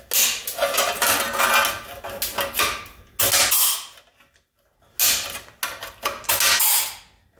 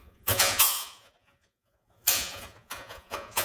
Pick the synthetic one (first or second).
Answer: second